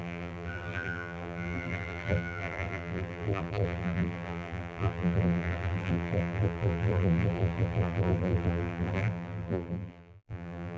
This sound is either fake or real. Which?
fake